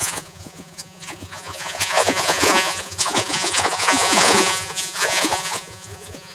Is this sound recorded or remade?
remade